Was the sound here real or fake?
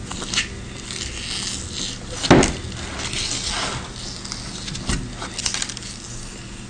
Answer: real